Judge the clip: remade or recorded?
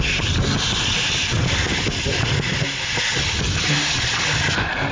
recorded